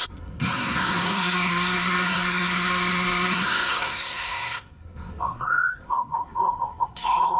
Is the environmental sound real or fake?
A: fake